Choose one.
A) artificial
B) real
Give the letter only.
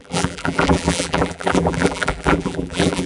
A